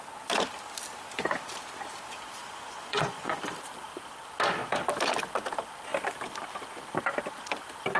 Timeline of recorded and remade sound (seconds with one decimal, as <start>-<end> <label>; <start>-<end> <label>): 0.0-2.4 recorded; 2.4-3.4 remade; 3.4-8.0 recorded